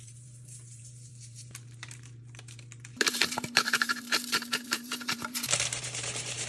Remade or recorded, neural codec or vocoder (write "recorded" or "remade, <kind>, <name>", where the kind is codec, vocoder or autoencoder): remade, vocoder, BigVGAN v2